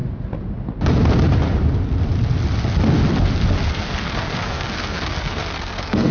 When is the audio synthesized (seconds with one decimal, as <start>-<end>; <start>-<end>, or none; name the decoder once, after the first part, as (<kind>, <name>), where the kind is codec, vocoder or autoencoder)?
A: 3.7-6.1 (codec, SNAC)